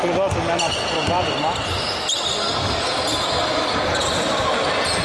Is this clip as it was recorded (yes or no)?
yes